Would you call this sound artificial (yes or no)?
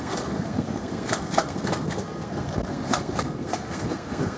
yes